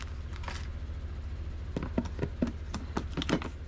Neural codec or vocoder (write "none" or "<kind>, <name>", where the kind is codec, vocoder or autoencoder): none